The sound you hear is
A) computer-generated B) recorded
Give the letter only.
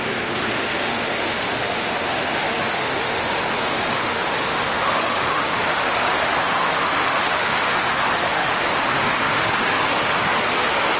A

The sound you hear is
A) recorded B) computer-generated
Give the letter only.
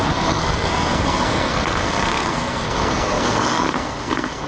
B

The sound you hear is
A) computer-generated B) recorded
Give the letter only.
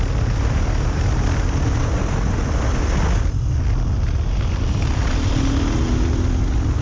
B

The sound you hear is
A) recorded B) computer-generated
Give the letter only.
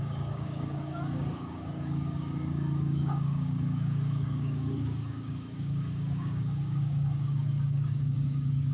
B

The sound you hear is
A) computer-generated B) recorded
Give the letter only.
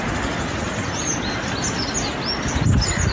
B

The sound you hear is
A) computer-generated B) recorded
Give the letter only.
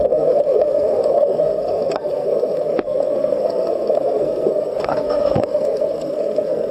A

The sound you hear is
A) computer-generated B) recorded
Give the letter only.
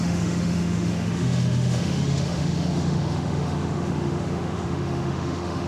A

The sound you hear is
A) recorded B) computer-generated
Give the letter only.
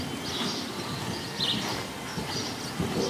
A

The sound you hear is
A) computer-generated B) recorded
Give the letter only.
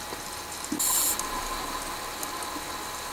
B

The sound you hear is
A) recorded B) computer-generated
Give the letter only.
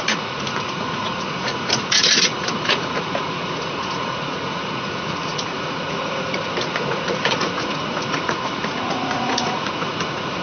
B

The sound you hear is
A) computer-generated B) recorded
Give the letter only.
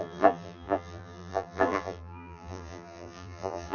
A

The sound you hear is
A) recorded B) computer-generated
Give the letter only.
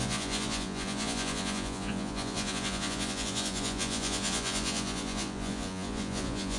B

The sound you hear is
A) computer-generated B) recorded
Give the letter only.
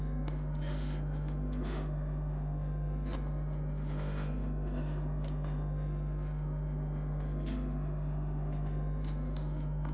A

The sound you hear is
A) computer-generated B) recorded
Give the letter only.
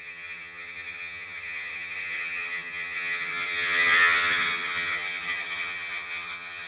A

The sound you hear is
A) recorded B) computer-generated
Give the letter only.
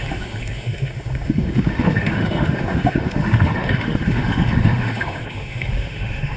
B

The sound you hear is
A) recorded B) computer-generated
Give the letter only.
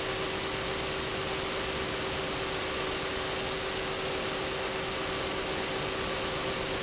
A